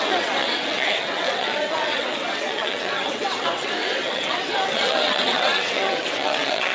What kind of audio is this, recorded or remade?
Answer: remade